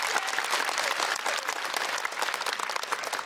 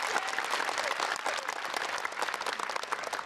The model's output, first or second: first